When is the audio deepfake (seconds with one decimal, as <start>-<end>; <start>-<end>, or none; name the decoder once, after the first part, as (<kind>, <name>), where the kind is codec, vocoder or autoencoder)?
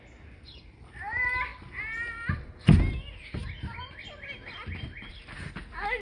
none